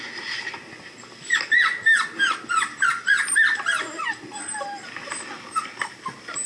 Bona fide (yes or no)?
yes